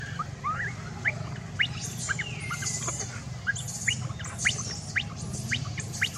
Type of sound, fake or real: real